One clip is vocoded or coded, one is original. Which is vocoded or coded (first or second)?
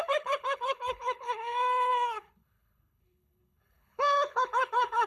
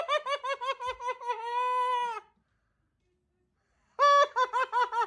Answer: first